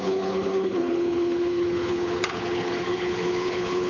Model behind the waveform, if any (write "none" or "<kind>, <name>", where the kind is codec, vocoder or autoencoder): codec, HILCodec